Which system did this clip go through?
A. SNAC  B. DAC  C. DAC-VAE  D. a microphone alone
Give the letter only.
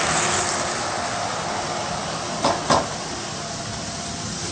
D